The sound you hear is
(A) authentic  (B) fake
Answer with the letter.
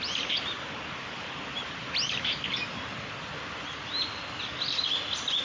A